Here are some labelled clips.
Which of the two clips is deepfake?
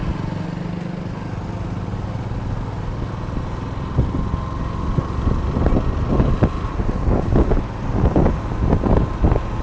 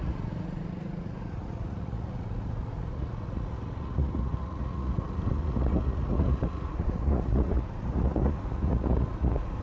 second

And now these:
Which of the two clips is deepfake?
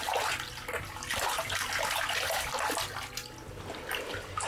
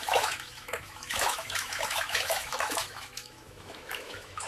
second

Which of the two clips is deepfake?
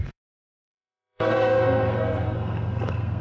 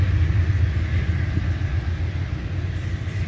first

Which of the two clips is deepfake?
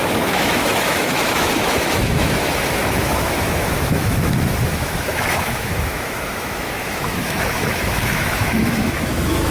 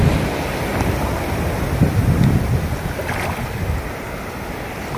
first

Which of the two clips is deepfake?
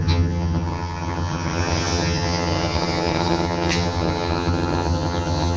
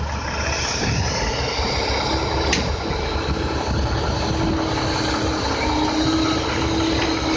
first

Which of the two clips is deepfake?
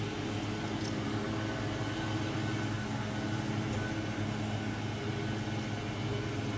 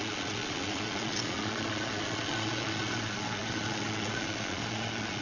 second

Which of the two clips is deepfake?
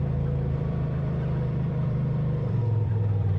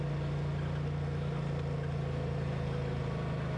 first